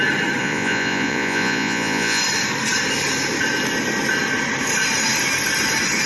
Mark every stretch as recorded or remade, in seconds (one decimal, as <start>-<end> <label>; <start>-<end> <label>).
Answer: 0.0-0.4 recorded; 0.4-2.2 remade; 2.2-6.1 recorded